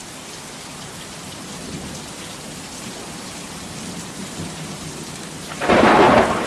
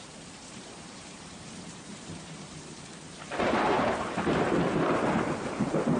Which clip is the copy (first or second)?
second